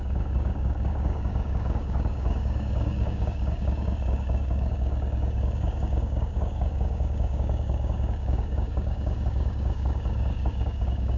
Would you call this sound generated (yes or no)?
yes